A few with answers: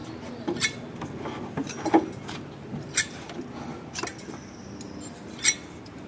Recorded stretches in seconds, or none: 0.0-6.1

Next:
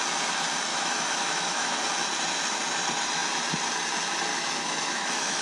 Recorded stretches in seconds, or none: 0.0-0.7; 1.8-4.3

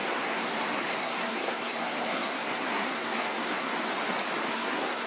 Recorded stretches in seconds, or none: 3.7-4.5

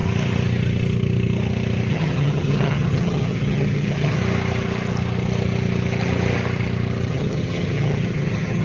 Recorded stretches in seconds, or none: 0.0-1.9; 4.2-7.1